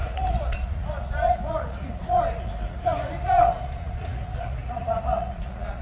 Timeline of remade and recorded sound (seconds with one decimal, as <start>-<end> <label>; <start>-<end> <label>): 0.0-5.8 remade